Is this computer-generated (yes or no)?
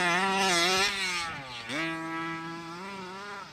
no